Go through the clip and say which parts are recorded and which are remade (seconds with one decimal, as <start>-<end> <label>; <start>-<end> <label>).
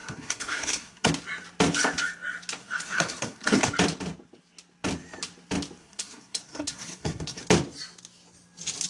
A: 0.0-1.1 remade; 1.1-2.6 recorded; 2.6-3.7 remade; 3.7-5.8 recorded; 5.8-7.4 remade; 7.4-8.9 recorded